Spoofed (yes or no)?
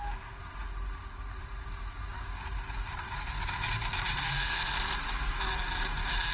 no